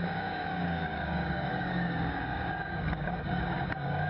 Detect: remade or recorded remade